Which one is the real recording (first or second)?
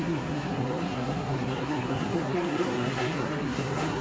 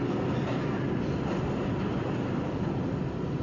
second